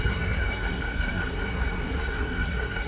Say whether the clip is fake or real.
fake